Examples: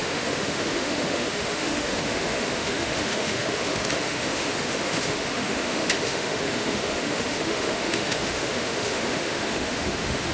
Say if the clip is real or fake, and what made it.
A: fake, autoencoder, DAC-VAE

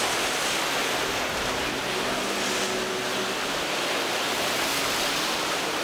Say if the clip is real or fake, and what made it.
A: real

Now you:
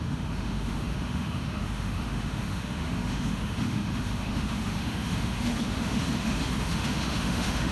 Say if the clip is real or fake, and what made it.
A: fake, autoencoder, DAC-VAE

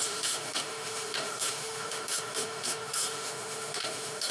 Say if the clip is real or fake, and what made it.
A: fake, autoencoder, DAC-VAE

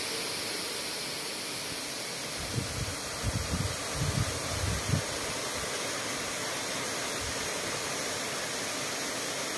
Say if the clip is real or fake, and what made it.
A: real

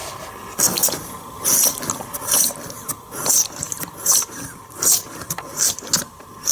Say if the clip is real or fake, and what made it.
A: real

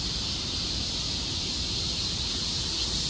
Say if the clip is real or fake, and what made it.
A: real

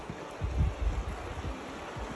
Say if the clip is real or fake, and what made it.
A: real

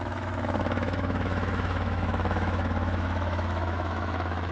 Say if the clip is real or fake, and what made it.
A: fake, autoencoder, DAC-VAE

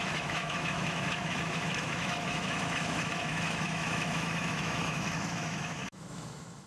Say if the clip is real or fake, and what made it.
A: fake, autoencoder, DAC-VAE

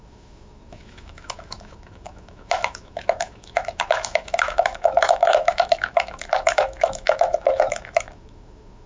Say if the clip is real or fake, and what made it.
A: fake, autoencoder, DAC-VAE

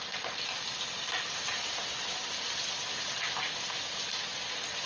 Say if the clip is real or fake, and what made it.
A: real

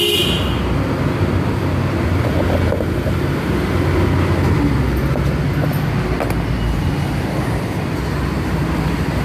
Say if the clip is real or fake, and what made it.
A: real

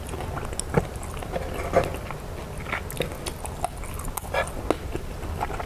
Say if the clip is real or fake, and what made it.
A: real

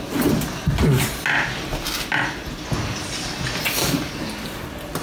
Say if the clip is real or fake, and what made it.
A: real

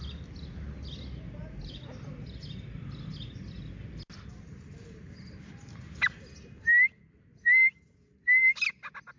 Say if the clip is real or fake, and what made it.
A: real